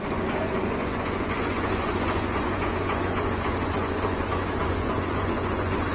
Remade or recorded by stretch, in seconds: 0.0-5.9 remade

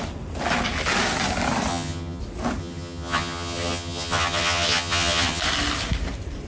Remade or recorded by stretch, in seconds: 0.0-1.7 recorded; 1.7-2.2 remade; 2.2-2.6 recorded; 2.6-5.4 remade; 5.4-6.5 recorded

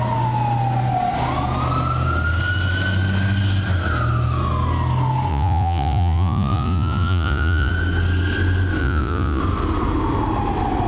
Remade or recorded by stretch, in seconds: 0.0-5.3 recorded; 5.3-7.7 remade; 7.7-8.8 recorded; 8.8-9.4 remade; 9.4-10.9 recorded